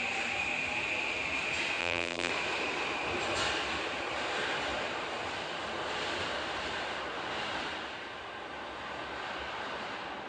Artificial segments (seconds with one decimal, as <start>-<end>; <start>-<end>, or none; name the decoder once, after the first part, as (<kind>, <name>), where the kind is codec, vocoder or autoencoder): 1.8-2.3 (vocoder, BigVGAN v2)